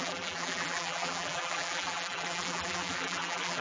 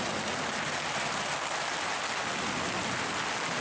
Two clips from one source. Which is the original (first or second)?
second